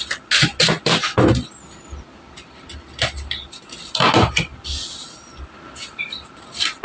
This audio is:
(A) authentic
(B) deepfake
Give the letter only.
A